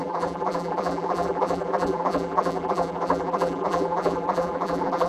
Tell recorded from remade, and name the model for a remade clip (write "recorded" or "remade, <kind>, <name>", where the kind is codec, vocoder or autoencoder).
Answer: remade, vocoder, BigVGAN v2